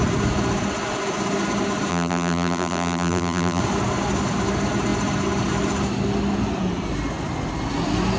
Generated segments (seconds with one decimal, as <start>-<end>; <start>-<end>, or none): 1.9-3.6